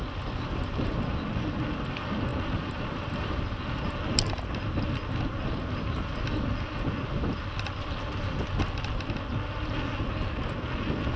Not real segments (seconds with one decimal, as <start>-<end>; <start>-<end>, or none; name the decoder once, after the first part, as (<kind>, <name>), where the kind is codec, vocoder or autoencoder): 2.3-3.4 (vocoder, BigVGAN v2)